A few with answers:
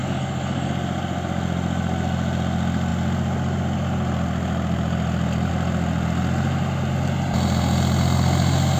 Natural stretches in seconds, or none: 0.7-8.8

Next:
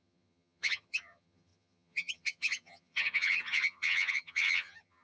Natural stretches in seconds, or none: none